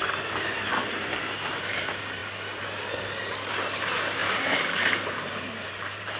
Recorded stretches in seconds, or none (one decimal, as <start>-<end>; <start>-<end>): 0.0-0.7; 1.8-4.2